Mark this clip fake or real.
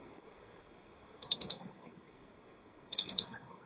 fake